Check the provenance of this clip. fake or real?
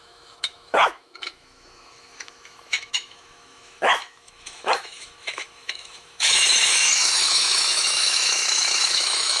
fake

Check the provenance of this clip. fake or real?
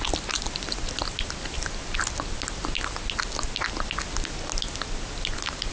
real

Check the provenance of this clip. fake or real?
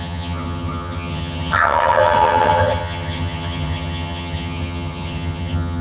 fake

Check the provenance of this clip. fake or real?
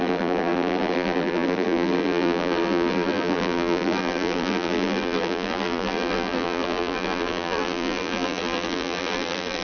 fake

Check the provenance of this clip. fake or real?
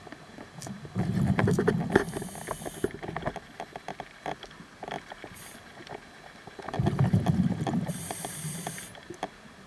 real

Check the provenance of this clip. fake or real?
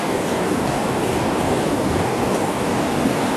fake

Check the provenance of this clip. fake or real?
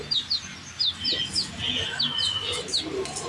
real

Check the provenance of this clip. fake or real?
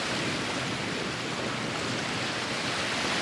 real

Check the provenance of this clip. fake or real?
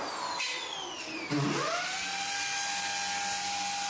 real